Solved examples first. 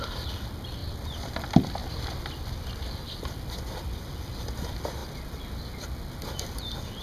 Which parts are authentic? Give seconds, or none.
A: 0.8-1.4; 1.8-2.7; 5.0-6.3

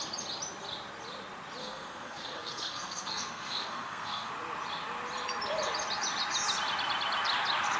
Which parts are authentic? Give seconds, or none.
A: 0.0-1.6; 4.3-7.8

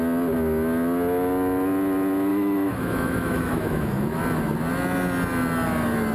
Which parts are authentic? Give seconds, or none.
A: 0.0-2.3; 4.2-6.1

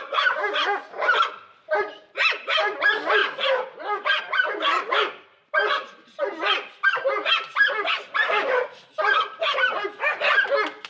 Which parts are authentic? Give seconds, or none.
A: 0.0-10.9

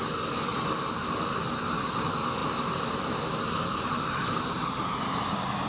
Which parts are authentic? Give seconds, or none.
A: 0.0-5.7

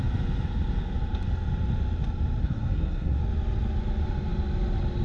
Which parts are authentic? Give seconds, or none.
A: 0.0-2.4; 3.2-5.0

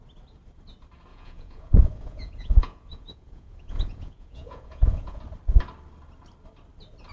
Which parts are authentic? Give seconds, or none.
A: 0.0-1.1; 5.2-7.1